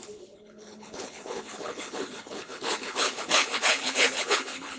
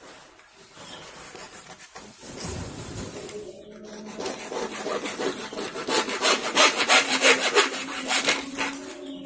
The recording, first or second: second